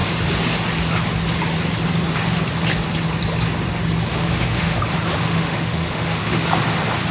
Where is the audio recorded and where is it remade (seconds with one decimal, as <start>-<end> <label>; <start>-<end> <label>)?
0.0-4.1 recorded; 4.1-4.8 remade; 4.8-5.2 recorded; 5.2-6.4 remade; 6.4-7.1 recorded